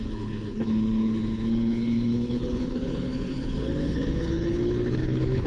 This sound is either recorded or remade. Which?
remade